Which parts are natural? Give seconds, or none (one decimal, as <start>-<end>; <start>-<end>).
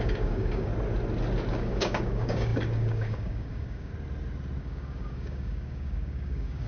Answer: 0.7-1.5; 3.9-4.6